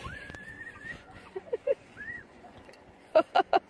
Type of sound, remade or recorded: remade